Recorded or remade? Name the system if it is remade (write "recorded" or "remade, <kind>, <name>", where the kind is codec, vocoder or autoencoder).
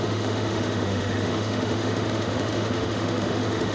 remade, autoencoder, DAC-VAE